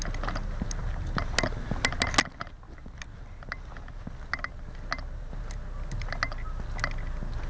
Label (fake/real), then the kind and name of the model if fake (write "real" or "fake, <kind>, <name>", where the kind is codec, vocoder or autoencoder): real